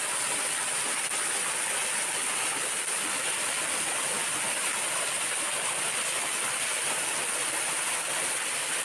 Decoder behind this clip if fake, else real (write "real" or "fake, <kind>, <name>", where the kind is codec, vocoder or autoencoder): real